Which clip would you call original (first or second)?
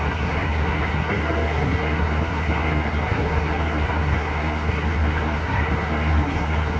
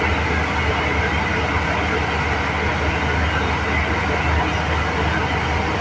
second